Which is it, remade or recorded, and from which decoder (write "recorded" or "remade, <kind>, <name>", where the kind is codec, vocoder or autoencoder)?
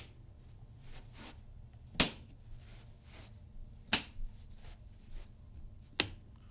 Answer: recorded